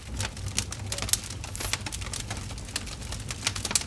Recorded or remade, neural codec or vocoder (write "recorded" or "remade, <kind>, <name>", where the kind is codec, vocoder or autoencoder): recorded